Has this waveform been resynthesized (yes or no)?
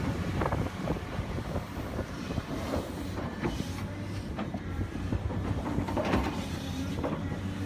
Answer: yes